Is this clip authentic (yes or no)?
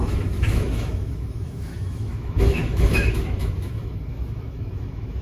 no